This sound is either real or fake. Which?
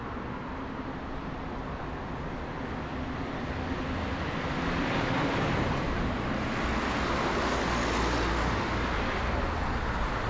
real